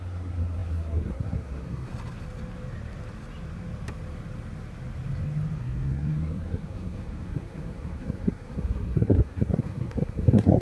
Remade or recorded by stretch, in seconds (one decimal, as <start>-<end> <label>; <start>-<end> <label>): 0.0-1.9 remade; 1.9-5.6 recorded; 5.6-10.6 remade